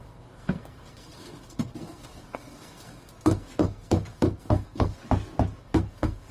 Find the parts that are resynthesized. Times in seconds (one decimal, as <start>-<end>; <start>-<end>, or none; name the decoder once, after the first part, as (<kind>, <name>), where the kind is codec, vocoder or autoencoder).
0.0-5.0 (codec, SNAC); 5.6-6.3

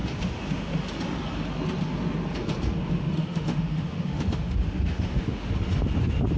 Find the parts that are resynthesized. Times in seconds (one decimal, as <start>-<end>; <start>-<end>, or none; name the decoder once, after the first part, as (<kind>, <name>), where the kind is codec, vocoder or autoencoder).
0.0-0.8 (autoencoder, DAC-VAE); 3.0-5.5

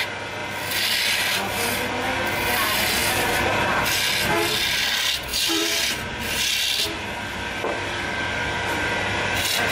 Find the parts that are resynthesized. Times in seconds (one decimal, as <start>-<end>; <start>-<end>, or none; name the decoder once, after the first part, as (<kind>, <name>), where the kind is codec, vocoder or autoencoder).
5.3-9.7 (vocoder, BigVGAN v2)